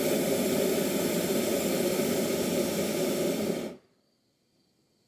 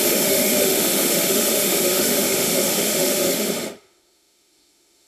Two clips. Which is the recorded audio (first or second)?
first